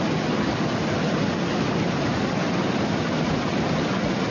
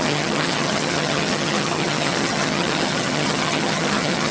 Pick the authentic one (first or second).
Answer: first